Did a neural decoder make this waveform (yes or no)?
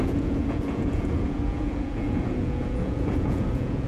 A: yes